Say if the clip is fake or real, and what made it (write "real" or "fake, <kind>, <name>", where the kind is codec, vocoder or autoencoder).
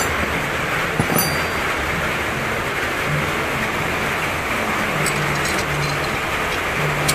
real